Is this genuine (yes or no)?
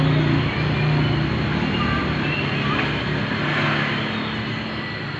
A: yes